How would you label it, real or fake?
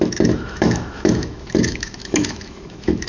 fake